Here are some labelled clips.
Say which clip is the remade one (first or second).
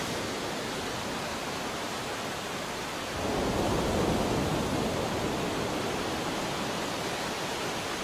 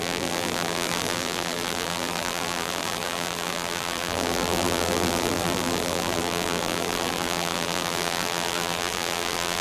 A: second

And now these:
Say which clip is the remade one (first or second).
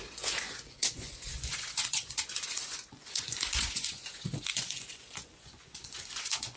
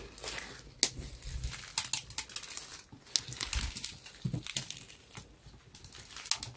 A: first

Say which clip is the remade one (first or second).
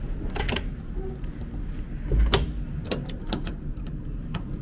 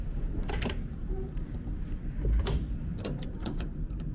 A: second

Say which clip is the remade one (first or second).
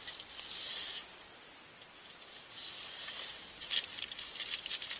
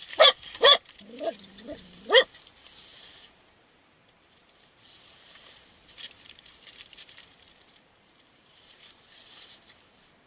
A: second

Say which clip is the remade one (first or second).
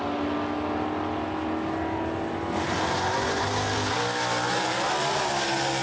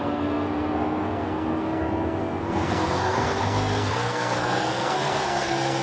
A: second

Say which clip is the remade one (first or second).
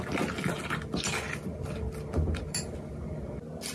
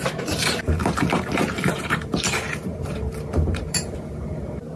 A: second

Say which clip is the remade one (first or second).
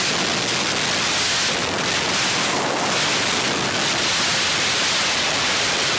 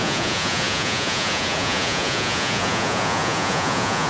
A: second